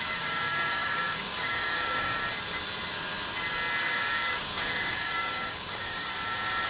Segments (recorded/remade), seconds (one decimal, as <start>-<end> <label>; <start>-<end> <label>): 0.0-2.2 remade; 2.2-3.8 recorded; 3.8-6.1 remade; 6.1-6.7 recorded